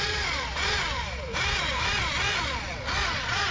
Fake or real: fake